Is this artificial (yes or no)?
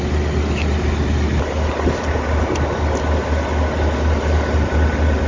no